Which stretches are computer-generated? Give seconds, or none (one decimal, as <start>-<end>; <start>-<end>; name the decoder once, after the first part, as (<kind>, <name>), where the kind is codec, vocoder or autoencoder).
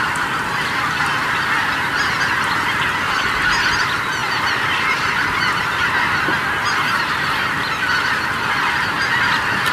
none